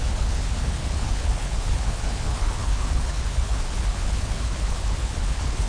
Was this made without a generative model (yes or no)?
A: no